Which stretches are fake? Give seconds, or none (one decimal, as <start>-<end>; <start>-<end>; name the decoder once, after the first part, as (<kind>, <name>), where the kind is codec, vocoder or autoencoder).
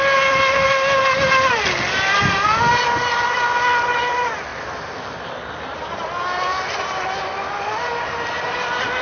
none